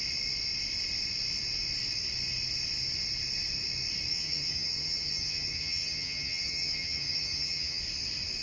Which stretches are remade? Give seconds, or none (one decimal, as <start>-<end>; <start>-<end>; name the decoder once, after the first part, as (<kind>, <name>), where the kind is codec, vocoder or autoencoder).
4.1-7.8 (vocoder, HiFi-GAN)